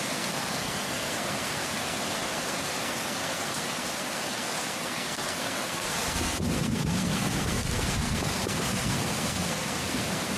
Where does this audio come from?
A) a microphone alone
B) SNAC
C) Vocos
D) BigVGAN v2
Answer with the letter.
B